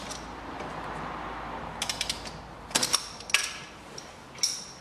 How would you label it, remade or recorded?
recorded